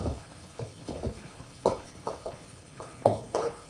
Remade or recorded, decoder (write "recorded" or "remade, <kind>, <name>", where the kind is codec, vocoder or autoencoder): remade, codec, HILCodec